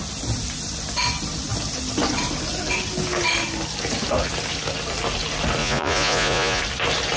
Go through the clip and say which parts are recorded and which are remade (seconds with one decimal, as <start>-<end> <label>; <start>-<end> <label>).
0.0-5.6 recorded; 5.6-6.6 remade; 6.6-7.2 recorded